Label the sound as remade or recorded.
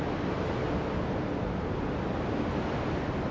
recorded